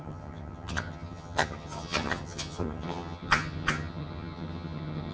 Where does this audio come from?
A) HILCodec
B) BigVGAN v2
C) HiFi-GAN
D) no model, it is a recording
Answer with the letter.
C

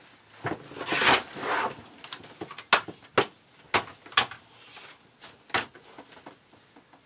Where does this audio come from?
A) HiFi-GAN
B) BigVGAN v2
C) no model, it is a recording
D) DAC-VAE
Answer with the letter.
C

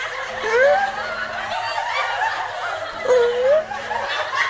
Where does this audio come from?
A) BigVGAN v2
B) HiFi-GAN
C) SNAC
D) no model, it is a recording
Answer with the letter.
D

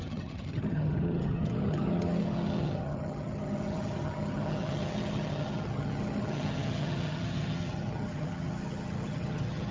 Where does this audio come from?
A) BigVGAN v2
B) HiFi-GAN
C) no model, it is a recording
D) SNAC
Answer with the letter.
B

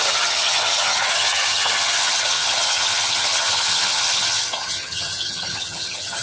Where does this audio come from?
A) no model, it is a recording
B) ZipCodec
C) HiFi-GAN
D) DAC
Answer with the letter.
C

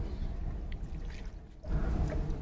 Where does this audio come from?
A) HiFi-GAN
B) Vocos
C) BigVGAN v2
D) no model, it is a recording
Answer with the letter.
D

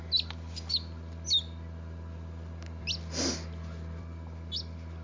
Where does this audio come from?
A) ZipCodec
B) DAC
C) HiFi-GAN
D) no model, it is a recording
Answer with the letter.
D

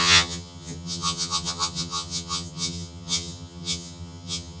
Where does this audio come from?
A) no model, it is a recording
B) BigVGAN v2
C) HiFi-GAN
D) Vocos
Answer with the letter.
C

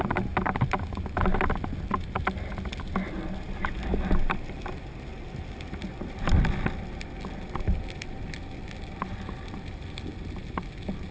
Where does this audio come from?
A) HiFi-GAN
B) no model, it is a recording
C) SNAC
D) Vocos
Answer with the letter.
B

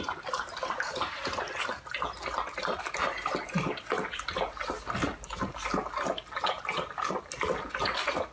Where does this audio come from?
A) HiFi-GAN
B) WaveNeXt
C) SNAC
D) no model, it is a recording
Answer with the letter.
D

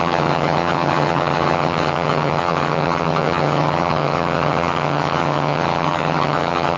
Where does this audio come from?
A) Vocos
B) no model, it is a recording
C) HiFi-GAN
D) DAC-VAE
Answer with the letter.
C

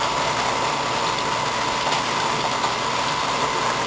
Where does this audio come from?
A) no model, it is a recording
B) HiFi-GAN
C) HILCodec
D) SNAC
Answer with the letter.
A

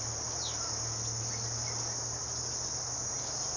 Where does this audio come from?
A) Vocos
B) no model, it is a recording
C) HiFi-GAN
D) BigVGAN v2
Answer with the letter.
B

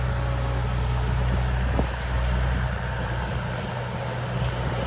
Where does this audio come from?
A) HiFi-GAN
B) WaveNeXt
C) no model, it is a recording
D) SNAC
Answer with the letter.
C